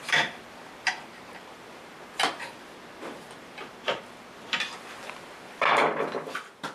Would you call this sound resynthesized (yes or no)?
yes